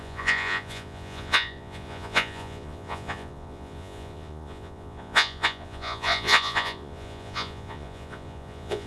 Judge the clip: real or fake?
fake